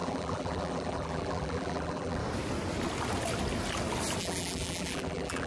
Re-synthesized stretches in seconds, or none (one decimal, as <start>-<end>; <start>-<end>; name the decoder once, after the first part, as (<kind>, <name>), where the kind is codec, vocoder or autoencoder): 0.0-2.2 (vocoder, BigVGAN v2); 4.2-5.5